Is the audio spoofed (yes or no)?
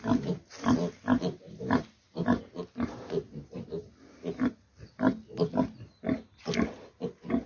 no